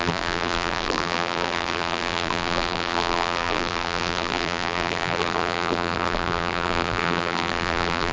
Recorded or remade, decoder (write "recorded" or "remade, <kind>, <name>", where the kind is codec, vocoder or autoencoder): remade, vocoder, BigVGAN v2